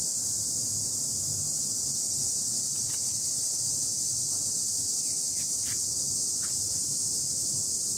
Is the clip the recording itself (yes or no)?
yes